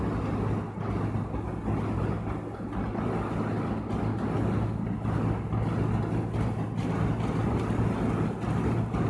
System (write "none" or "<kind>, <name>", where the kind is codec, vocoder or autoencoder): none